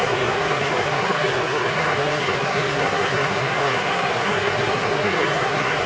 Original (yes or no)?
no